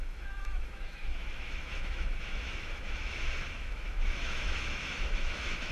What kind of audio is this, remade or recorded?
remade